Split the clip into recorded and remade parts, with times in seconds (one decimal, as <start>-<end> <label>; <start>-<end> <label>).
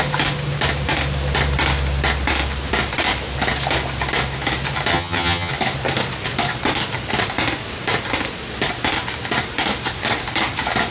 0.0-4.9 recorded; 4.9-5.5 remade; 5.5-10.9 recorded